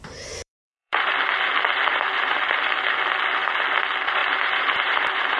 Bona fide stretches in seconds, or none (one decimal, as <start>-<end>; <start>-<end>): 0.0-0.4; 1.1-1.9; 2.5-4.2